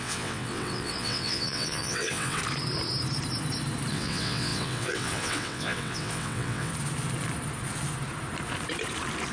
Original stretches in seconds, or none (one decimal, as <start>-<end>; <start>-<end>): 2.4-3.9; 6.7-9.3